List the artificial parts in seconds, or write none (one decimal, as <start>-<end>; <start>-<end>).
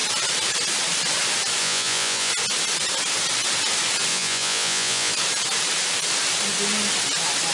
1.6-2.3; 4.1-5.1